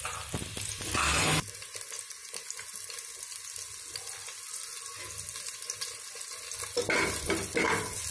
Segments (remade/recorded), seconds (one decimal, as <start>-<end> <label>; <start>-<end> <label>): 0.0-8.1 recorded